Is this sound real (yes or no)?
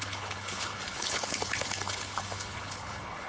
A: no